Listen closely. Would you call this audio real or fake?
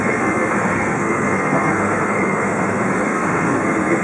fake